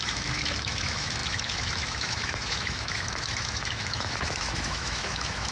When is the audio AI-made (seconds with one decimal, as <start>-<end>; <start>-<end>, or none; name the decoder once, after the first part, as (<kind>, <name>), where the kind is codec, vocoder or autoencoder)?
0.0-5.5 (autoencoder, DAC-VAE)